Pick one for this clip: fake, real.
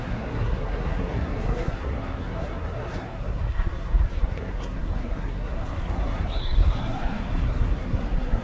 fake